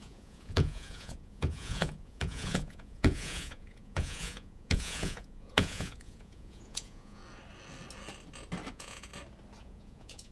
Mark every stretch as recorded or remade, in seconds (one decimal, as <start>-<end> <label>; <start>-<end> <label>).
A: 0.0-7.2 remade; 7.2-8.7 recorded; 8.7-9.1 remade; 9.1-9.6 recorded; 9.6-10.3 remade